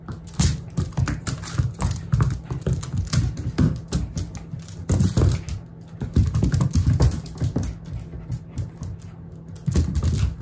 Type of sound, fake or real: real